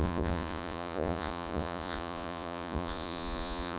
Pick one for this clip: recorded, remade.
remade